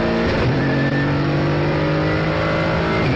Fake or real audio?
real